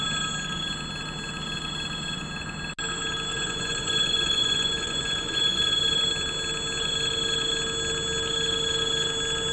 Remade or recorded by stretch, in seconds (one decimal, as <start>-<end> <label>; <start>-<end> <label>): 0.0-3.3 recorded; 3.3-5.7 remade; 5.7-9.5 recorded

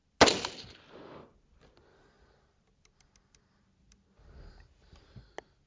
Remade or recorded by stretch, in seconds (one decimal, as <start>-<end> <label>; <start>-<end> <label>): 0.0-5.7 recorded

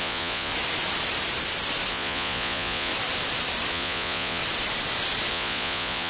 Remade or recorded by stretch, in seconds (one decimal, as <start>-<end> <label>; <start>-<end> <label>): 0.0-0.5 remade; 0.5-1.9 recorded; 1.9-2.9 remade; 2.9-3.7 recorded; 3.7-4.4 remade; 4.4-5.3 recorded; 5.3-6.1 remade